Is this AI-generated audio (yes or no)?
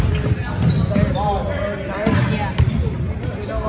no